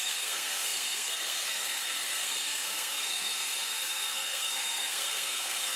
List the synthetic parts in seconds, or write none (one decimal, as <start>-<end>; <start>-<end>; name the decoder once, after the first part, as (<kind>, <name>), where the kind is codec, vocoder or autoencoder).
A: 0.0-5.8 (codec, SNAC)